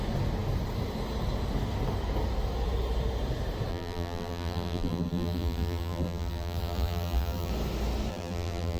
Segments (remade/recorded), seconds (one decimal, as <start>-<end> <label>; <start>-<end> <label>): 0.0-3.7 recorded; 3.7-7.5 remade; 7.5-8.1 recorded; 8.1-8.8 remade